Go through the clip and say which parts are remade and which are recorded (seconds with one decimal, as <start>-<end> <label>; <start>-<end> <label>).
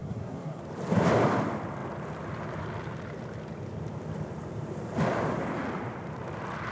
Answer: 0.0-0.6 remade; 0.6-6.7 recorded